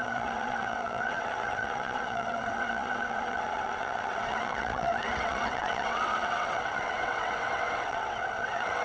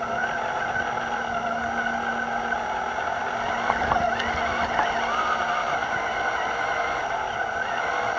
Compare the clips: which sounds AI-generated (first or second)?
first